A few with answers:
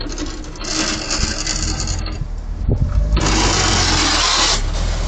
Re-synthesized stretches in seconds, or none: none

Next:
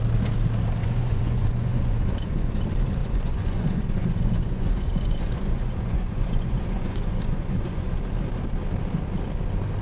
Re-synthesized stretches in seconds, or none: 0.8-2.5 (vocoder, Vocos); 3.0-7.9

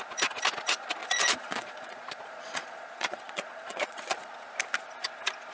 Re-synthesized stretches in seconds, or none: 1.0-4.3 (vocoder, Vocos)

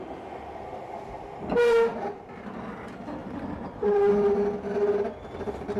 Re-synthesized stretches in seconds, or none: 3.2-4.1 (vocoder, BigVGAN v2)